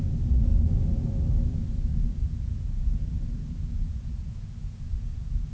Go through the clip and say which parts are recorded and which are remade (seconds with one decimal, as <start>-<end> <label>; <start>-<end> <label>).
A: 0.0-1.9 recorded; 1.9-5.5 remade